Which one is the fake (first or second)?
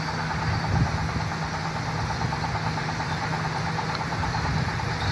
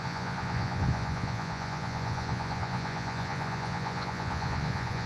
second